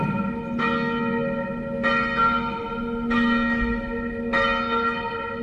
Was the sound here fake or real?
real